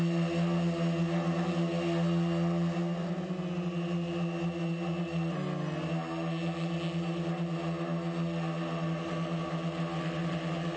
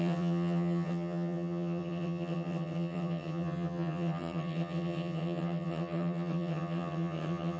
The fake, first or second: second